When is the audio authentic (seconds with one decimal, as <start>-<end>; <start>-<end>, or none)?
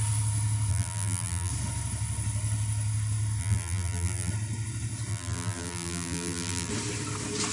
0.0-0.7; 1.5-3.4; 4.3-5.1; 6.7-7.5